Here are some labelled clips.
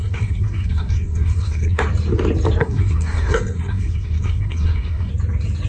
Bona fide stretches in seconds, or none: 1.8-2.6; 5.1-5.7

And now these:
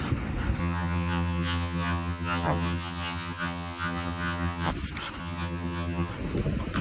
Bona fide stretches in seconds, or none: 0.0-0.6; 4.7-5.2; 6.1-6.8

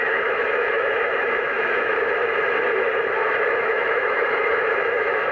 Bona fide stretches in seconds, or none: 2.2-3.0

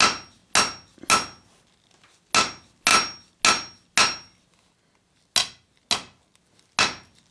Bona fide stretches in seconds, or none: 0.0-7.3

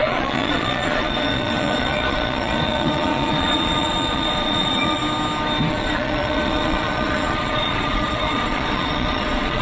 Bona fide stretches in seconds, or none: 5.0-5.7

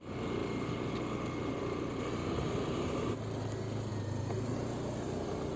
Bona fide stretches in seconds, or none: 0.0-5.6

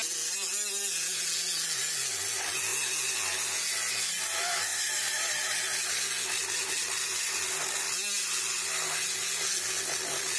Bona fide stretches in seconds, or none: 0.0-4.7; 5.6-10.4

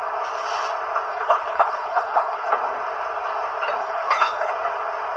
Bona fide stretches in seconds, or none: 0.0-1.1; 2.5-3.8; 4.5-5.2